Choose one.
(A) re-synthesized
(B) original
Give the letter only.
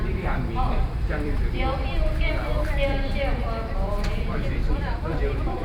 A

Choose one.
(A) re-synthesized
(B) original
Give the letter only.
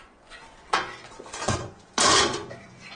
A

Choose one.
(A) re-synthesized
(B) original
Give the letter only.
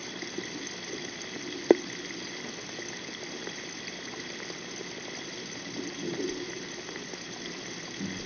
B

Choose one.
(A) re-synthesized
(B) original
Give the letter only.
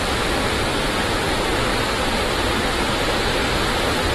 B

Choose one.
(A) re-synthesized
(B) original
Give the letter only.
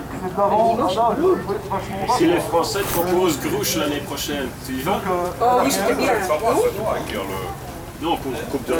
A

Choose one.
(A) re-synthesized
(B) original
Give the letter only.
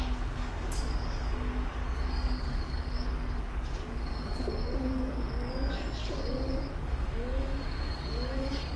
A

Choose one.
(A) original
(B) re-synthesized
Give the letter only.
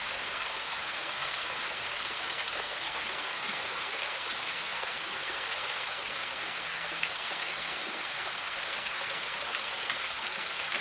B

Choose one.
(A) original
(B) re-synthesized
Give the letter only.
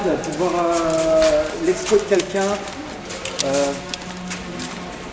A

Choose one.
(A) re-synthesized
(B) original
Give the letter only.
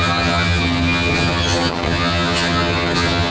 A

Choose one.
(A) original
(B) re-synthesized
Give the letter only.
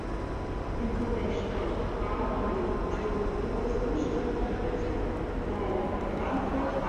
A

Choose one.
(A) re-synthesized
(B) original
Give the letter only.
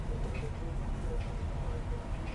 B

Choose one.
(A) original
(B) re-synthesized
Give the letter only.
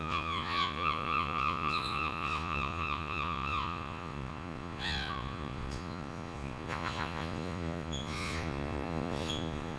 B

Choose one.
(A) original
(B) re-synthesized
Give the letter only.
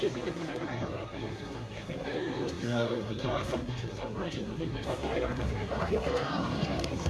B